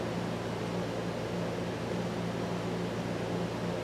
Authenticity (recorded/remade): recorded